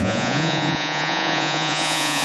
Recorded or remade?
remade